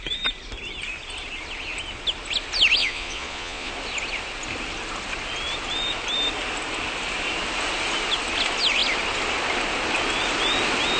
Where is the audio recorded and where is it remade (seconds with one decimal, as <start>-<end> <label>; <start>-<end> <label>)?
0.0-2.8 recorded; 2.8-3.7 remade; 3.7-11.0 recorded